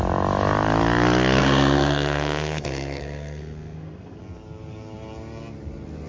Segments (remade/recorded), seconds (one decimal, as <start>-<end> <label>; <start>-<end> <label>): 0.0-1.4 recorded; 1.4-4.2 remade; 4.2-6.1 recorded